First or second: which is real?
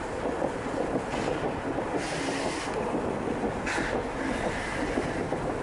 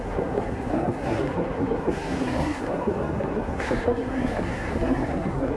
first